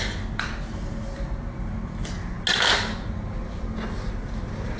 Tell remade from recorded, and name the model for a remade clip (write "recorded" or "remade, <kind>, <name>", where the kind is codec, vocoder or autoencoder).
recorded